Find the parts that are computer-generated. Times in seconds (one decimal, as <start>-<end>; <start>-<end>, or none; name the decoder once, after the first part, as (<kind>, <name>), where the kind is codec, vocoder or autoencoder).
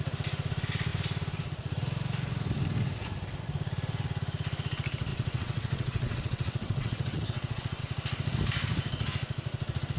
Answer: 5.1-7.8 (vocoder, WaveNeXt)